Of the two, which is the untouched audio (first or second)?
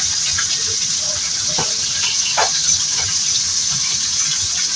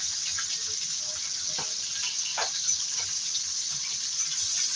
second